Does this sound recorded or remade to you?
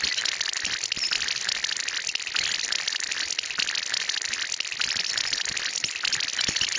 recorded